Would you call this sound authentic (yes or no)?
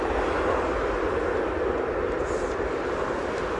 yes